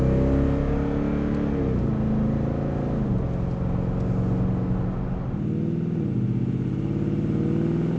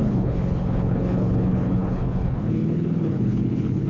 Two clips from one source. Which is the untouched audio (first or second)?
first